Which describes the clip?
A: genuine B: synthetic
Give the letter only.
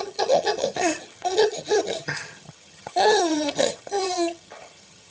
B